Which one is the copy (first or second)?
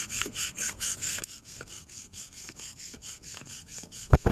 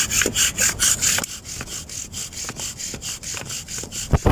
first